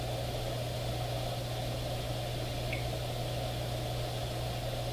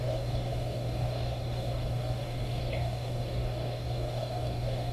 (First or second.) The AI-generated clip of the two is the second